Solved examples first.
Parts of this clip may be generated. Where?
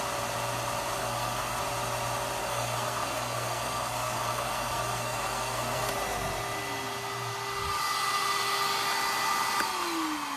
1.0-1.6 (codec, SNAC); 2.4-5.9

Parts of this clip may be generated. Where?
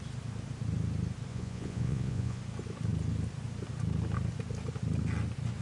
1.3-2.4 (vocoder, Vocos)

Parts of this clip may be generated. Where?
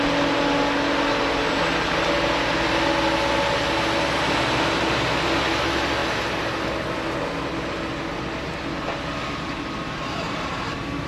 none